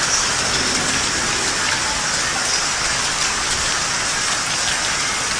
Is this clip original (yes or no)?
yes